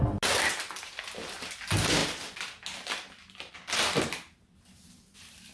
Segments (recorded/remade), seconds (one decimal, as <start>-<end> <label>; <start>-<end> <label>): 0.0-5.5 recorded

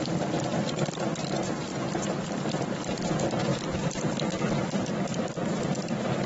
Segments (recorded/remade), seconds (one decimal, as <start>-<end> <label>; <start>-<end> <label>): 0.0-1.7 recorded; 1.7-2.2 remade; 2.2-6.3 recorded

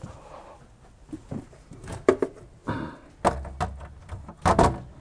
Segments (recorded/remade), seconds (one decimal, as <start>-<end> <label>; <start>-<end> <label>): 0.0-5.0 recorded

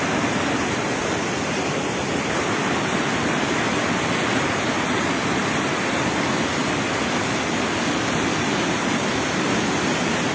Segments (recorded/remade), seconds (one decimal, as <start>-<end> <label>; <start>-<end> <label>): 0.0-10.3 remade

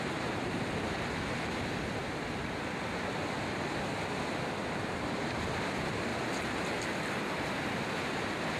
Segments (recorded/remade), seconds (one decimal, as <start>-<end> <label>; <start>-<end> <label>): 0.0-8.6 remade